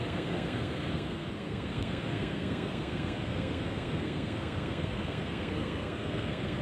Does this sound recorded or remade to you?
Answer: remade